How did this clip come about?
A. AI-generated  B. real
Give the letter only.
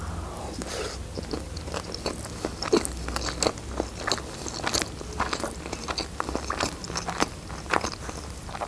B